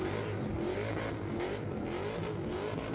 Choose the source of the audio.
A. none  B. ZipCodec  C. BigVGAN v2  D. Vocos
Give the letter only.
A